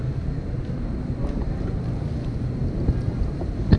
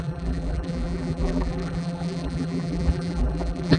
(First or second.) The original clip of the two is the first